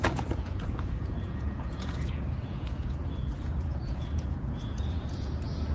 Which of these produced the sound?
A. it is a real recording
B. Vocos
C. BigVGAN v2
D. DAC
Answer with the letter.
B